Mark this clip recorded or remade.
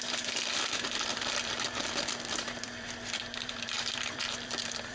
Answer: remade